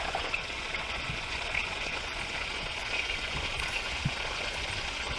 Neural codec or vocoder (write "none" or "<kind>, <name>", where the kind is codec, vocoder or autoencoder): vocoder, Vocos